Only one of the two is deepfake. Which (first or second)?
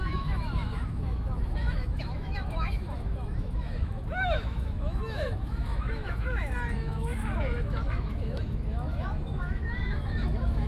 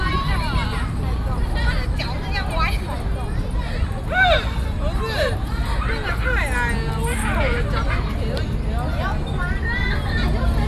first